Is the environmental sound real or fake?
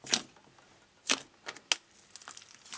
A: real